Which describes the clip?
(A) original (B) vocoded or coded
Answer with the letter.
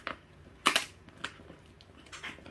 A